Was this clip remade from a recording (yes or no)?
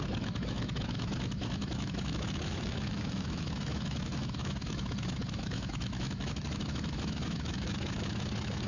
yes